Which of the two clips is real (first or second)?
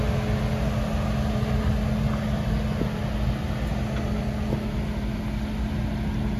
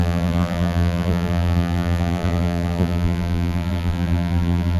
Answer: first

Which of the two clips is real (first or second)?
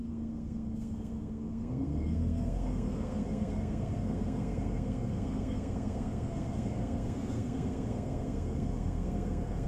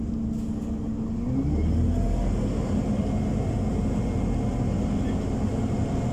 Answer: second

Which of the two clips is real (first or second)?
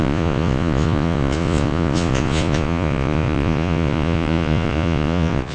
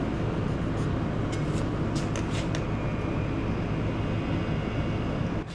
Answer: second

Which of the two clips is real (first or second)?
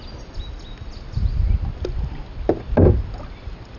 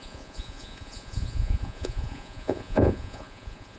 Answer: first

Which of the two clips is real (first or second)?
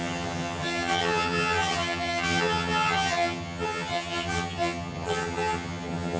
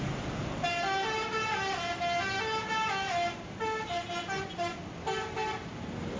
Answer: second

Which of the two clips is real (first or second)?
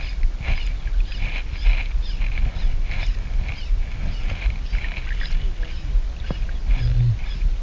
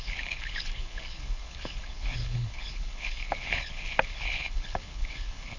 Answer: first